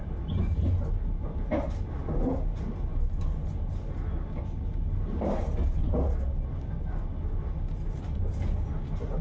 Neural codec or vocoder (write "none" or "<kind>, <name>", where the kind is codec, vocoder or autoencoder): none